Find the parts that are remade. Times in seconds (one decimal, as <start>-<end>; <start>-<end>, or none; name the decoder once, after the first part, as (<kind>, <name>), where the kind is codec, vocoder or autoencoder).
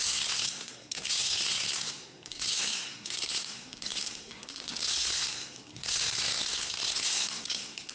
0.0-7.9 (codec, SNAC)